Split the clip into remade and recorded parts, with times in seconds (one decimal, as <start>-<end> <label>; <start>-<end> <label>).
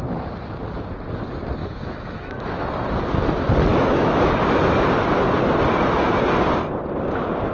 0.0-1.6 recorded; 1.6-2.7 remade; 2.7-3.7 recorded; 3.7-4.6 remade; 4.6-7.5 recorded